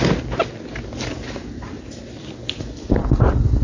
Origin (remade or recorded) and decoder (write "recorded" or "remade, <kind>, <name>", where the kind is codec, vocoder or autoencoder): recorded